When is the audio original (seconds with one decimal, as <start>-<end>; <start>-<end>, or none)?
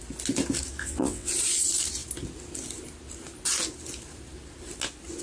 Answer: 0.0-0.8; 1.3-5.2